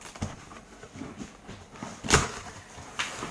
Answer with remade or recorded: recorded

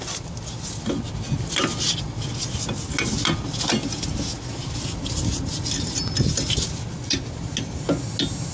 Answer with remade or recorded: recorded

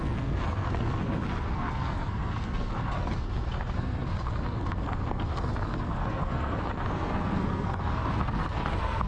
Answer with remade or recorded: remade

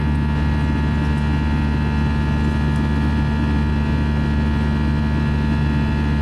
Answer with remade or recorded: recorded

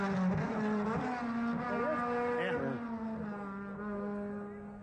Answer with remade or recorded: recorded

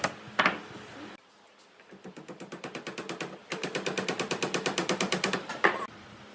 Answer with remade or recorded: recorded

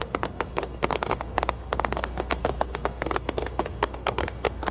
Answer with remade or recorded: remade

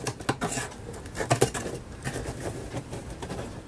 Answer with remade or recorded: recorded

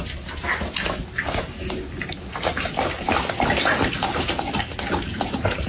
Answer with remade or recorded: recorded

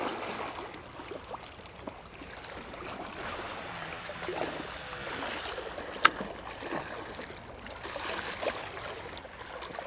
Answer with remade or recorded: recorded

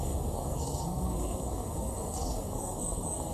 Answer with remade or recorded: remade